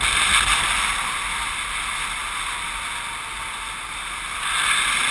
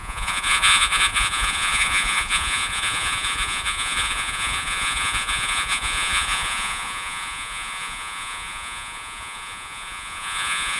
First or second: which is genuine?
first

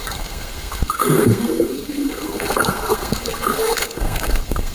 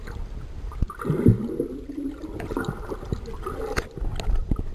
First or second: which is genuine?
second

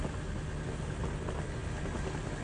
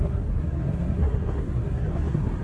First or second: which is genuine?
first